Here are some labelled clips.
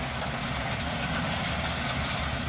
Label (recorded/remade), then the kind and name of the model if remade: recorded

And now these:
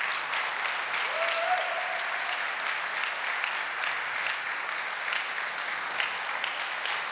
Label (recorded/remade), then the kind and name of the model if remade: recorded